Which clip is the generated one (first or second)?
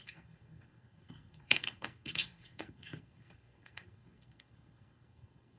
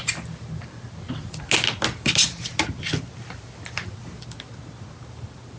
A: first